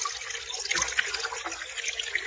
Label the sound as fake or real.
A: real